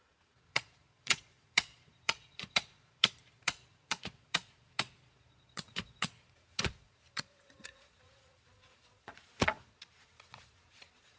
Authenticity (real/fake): fake